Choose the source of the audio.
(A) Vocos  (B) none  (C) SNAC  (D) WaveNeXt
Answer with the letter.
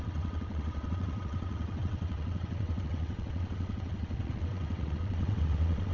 D